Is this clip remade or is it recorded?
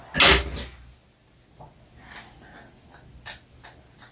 recorded